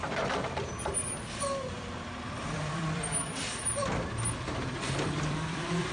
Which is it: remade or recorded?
remade